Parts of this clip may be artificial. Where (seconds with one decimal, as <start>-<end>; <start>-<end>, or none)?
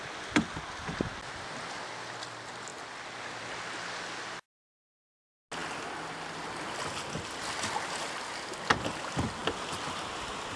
none